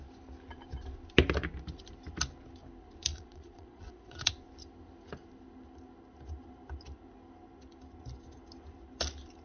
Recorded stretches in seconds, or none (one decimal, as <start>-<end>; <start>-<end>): 0.0-3.1; 4.3-9.4